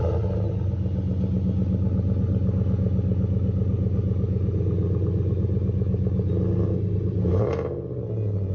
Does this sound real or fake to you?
real